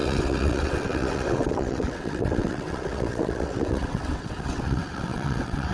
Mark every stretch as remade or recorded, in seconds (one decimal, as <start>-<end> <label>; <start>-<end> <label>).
0.0-5.7 remade